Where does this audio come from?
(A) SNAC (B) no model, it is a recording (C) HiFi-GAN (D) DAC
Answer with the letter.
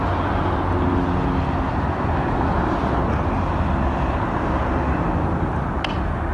B